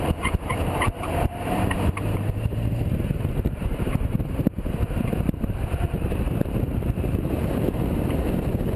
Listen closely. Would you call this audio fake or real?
fake